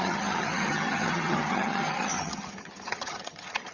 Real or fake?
fake